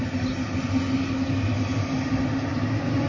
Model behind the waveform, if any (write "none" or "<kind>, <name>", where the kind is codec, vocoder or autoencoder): none